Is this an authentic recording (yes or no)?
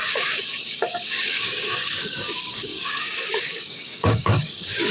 no